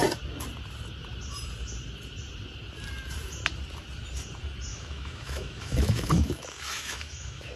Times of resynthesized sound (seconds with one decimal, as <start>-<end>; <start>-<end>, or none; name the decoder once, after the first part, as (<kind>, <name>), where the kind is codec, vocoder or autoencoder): 4.7-7.6 (autoencoder, DAC-VAE)